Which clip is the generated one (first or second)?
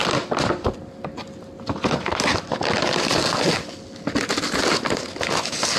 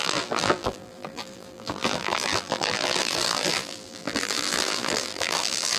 second